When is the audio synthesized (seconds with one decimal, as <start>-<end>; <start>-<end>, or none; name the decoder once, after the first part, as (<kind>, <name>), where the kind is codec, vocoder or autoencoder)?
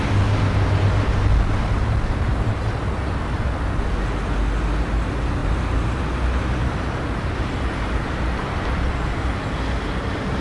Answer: 2.3-2.8 (vocoder, BigVGAN v2); 5.4-6.0; 6.6-7.4